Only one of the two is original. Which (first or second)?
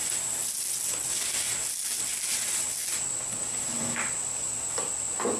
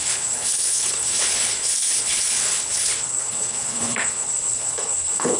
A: first